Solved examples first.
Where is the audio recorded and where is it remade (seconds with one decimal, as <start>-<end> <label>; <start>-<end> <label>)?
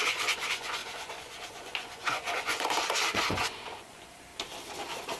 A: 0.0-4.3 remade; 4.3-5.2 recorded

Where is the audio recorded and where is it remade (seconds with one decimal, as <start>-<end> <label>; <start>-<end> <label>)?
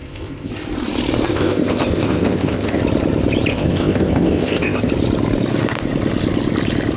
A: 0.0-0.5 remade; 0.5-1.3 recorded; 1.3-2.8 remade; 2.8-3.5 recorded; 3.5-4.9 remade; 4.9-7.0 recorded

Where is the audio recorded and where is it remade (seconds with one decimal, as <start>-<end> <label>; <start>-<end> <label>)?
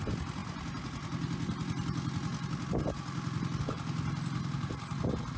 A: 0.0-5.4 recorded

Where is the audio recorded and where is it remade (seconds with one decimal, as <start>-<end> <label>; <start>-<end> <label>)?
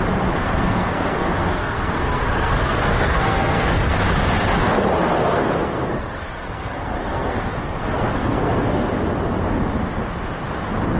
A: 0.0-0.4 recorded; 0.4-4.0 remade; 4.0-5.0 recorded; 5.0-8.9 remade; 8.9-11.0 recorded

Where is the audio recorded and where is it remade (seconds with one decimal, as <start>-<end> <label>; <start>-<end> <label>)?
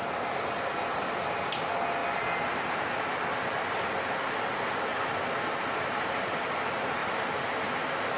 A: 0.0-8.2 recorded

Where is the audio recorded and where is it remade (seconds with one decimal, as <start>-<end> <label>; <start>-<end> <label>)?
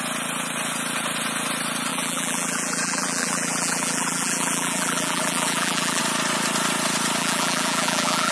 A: 0.0-1.9 recorded; 1.9-6.0 remade; 6.0-7.2 recorded; 7.2-8.3 remade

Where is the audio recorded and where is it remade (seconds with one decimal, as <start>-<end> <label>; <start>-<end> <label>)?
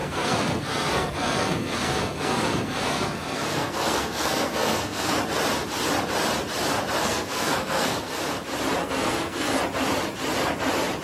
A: 0.0-5.1 remade; 5.1-7.0 recorded; 7.0-8.2 remade; 8.2-8.8 recorded; 8.8-9.6 remade; 9.6-11.0 recorded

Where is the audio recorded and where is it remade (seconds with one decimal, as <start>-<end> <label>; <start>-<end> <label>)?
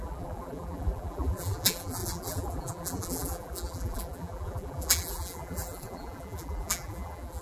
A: 0.0-7.4 remade